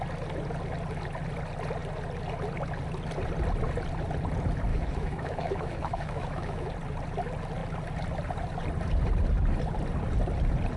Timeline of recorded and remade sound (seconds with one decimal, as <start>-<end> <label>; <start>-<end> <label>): 0.0-4.7 recorded; 4.7-6.7 remade; 6.7-10.8 recorded